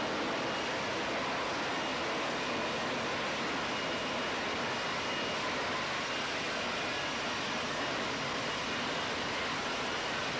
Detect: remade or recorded recorded